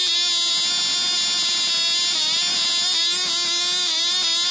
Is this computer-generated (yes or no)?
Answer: no